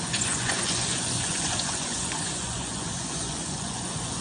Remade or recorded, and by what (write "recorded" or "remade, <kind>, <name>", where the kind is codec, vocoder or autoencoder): remade, vocoder, Vocos